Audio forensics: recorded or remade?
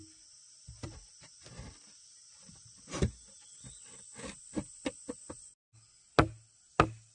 recorded